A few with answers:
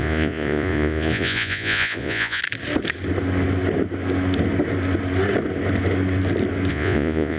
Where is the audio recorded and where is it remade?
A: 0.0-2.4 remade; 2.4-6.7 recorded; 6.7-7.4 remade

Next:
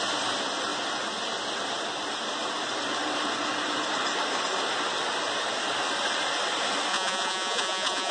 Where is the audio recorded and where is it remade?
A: 0.0-6.9 recorded; 6.9-8.1 remade

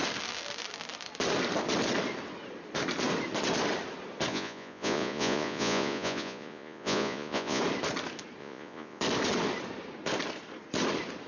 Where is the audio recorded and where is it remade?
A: 0.0-4.3 recorded; 4.3-7.6 remade; 7.6-8.4 recorded; 8.4-9.0 remade; 9.0-11.3 recorded

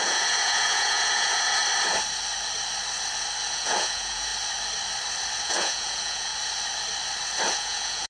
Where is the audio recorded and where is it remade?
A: 0.0-1.6 remade; 1.6-3.5 recorded; 3.5-4.3 remade; 4.3-5.4 recorded; 5.4-6.3 remade; 6.3-7.5 recorded; 7.5-8.1 remade

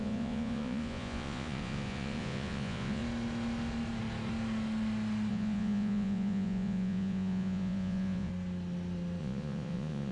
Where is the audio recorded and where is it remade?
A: 0.0-3.0 remade; 3.0-5.3 recorded; 5.3-8.3 remade; 8.3-9.2 recorded; 9.2-10.1 remade